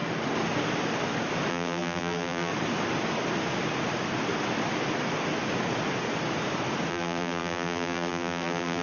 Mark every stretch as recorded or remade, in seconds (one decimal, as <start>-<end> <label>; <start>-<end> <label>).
0.0-1.5 recorded; 1.5-2.5 remade; 2.5-6.9 recorded; 6.9-8.8 remade